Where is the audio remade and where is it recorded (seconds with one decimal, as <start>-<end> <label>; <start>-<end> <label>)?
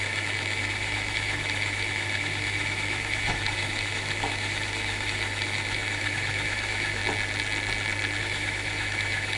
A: 0.0-7.0 remade; 7.0-8.2 recorded; 8.2-9.4 remade